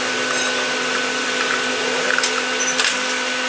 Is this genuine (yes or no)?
yes